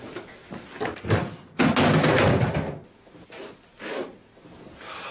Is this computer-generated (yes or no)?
no